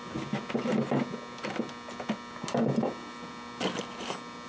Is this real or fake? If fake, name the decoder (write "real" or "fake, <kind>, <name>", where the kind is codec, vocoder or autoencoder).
real